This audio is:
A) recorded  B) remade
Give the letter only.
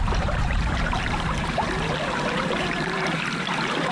B